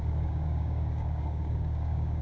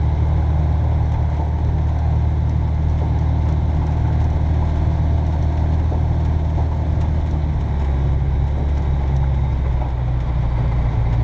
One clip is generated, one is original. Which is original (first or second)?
second